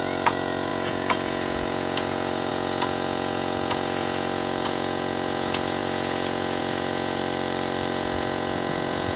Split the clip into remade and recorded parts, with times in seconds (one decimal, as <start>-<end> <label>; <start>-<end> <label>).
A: 0.0-7.2 remade; 7.2-7.9 recorded; 7.9-9.2 remade